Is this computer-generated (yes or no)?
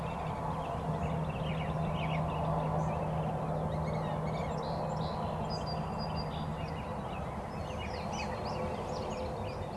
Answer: no